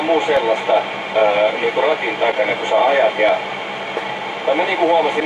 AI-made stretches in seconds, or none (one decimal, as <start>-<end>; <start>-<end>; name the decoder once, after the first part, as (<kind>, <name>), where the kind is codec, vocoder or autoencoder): none